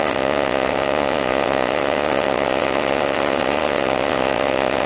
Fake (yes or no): yes